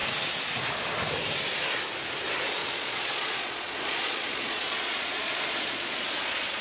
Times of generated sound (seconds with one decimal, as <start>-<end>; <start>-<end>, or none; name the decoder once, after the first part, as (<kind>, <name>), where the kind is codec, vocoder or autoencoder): 2.6-6.6 (vocoder, Vocos)